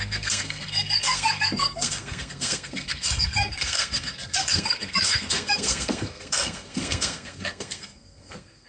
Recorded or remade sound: remade